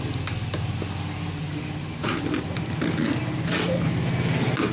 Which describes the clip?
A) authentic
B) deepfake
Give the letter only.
A